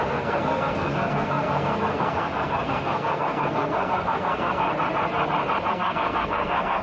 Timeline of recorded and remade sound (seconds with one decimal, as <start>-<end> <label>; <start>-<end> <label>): 0.0-4.7 remade; 4.7-5.7 recorded; 5.7-6.8 remade